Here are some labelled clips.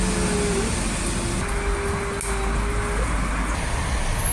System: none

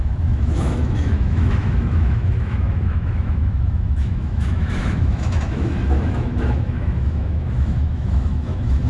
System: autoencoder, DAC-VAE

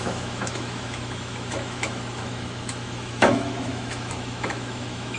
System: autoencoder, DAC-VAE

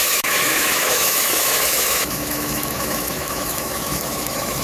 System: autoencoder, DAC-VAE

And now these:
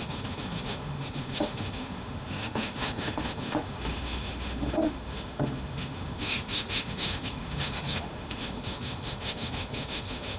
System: autoencoder, DAC-VAE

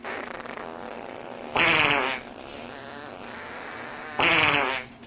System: none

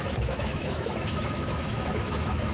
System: autoencoder, DAC-VAE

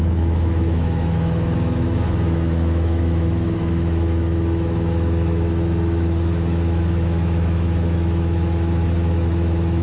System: autoencoder, DAC-VAE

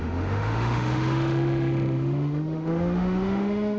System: autoencoder, DAC-VAE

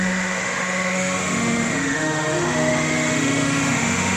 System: autoencoder, DAC-VAE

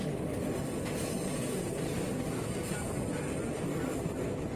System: none